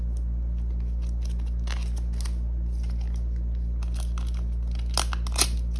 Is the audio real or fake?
real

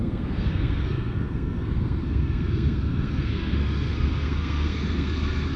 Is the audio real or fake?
fake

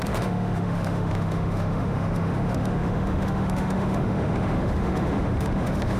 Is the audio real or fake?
fake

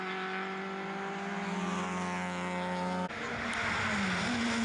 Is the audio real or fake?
real